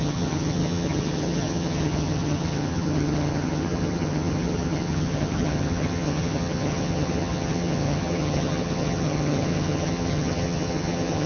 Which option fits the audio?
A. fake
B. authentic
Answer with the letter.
A